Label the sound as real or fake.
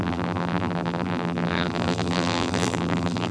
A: fake